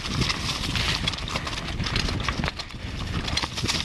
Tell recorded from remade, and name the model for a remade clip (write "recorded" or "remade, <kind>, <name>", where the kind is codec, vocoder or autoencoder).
recorded